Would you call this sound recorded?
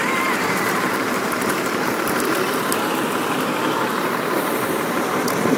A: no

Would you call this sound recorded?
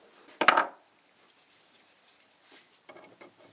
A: yes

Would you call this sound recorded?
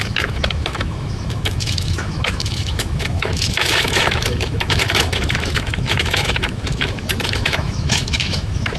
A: no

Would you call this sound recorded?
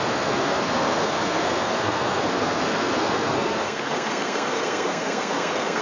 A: no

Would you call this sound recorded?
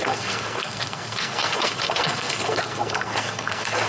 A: no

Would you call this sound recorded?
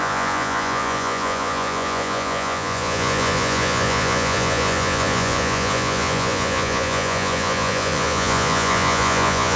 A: no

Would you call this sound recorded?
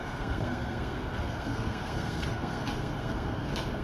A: no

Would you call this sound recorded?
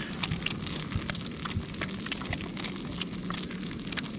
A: yes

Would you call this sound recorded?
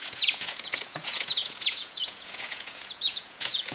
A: no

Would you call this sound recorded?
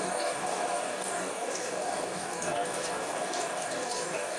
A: no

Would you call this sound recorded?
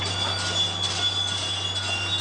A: yes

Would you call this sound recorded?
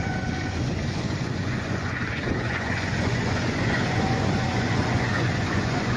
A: no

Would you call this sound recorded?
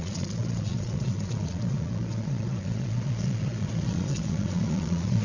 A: no